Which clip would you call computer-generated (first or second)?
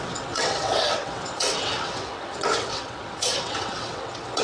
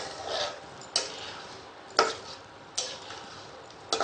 first